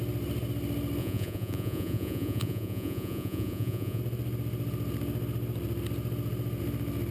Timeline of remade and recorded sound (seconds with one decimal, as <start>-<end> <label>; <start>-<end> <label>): 0.0-1.0 recorded; 1.0-4.0 remade; 4.0-7.1 recorded